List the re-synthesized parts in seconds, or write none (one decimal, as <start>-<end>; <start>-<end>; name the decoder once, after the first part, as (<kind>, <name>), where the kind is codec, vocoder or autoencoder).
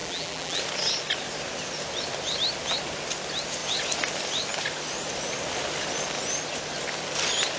0.0-0.6 (vocoder, BigVGAN v2)